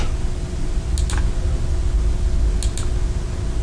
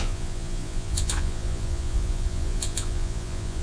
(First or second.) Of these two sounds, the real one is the first